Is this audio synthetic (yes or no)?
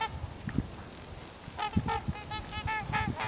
no